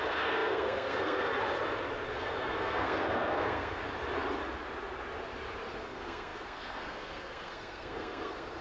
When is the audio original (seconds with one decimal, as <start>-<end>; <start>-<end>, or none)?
1.3-2.1; 3.8-5.8